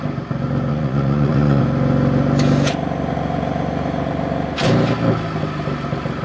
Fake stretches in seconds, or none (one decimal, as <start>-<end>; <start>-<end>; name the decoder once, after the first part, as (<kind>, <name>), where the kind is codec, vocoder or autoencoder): 0.7-1.6 (vocoder, Vocos)